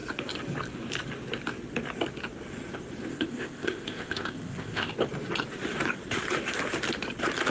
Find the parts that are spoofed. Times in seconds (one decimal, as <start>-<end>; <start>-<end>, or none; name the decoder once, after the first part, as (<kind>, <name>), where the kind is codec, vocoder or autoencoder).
3.1-4.9 (codec, ZipCodec)